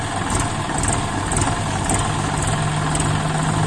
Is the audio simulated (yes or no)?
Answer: no